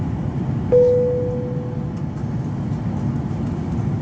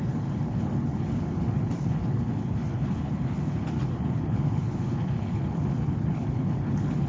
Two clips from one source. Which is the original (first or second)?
first